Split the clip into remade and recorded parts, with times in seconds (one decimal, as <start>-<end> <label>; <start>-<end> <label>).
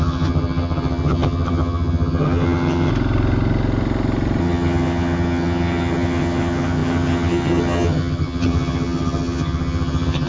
0.0-2.9 remade; 2.9-4.4 recorded; 4.4-10.3 remade